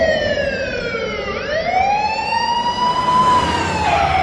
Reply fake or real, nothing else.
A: fake